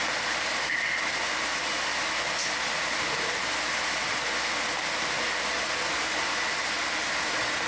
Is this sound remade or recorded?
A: recorded